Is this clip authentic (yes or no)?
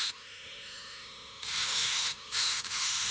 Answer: no